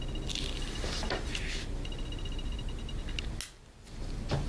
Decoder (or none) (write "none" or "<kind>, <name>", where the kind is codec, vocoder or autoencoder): none